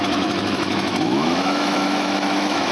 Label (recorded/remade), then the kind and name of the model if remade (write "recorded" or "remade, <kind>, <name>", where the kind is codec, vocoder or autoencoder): remade, autoencoder, DAC-VAE